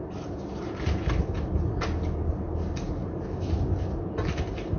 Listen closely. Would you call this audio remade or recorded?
recorded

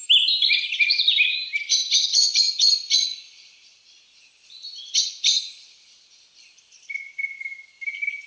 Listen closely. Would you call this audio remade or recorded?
recorded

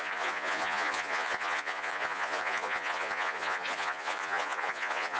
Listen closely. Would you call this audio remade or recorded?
remade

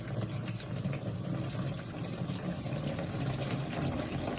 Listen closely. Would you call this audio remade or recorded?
recorded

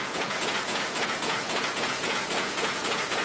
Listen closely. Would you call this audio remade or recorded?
remade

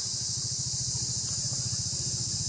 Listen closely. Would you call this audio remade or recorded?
recorded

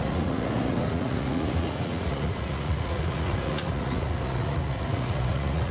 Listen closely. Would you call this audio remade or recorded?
remade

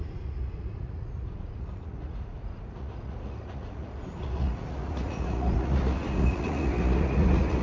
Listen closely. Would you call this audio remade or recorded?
remade